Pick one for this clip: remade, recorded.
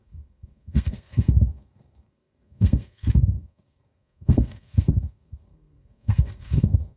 remade